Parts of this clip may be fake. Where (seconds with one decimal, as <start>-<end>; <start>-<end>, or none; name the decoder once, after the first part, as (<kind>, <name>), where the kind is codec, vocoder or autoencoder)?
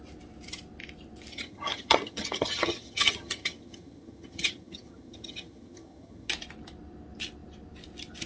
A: 1.3-6.3 (vocoder, HiFi-GAN)